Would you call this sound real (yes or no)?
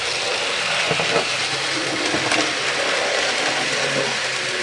yes